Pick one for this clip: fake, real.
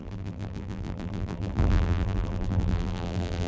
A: fake